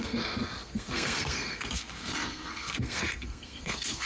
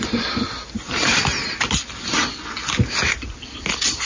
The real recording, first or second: second